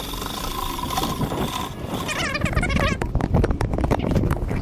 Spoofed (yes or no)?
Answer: yes